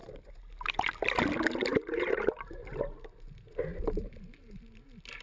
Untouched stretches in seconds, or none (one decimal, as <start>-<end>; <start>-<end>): 0.0-1.7; 2.7-3.7; 4.6-5.2